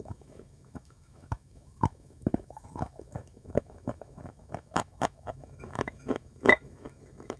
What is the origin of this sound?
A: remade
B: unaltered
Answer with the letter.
A